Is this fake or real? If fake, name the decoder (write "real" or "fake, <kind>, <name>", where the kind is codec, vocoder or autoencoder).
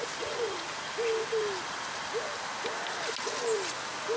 real